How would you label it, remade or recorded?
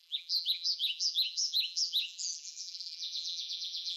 remade